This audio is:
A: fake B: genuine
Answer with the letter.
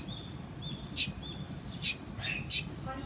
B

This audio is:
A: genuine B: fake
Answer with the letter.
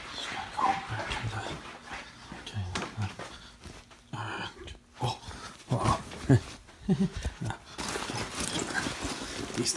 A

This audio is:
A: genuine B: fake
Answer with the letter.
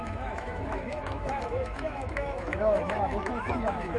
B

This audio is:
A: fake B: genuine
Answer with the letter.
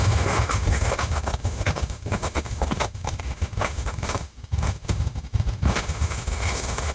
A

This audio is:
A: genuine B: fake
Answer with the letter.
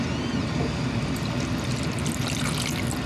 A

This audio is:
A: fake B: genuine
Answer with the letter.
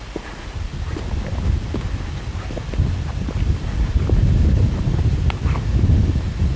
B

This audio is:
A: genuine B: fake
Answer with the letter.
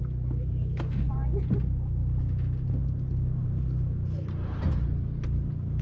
A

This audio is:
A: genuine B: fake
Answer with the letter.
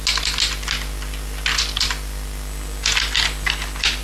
A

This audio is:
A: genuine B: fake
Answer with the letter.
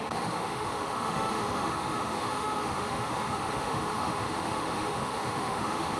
B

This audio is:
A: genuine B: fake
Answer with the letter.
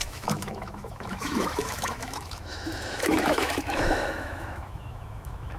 B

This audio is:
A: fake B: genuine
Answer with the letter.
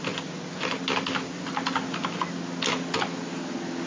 B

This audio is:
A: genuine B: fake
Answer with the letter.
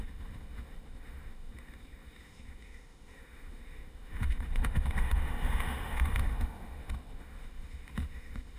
B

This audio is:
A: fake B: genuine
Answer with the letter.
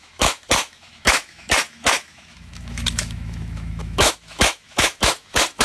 A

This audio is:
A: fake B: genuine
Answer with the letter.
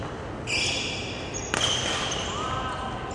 B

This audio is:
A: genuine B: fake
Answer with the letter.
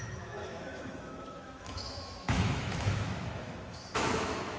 B